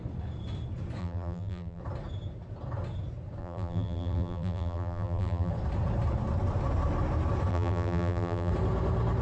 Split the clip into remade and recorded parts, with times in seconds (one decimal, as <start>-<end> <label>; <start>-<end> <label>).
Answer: 0.0-1.0 recorded; 1.0-1.8 remade; 1.8-3.4 recorded; 3.4-5.5 remade; 5.5-7.5 recorded; 7.5-8.5 remade; 8.5-9.2 recorded